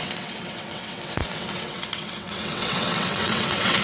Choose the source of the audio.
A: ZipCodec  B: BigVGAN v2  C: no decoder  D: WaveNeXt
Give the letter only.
D